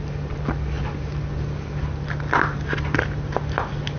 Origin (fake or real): real